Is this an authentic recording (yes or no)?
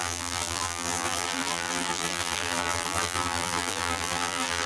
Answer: no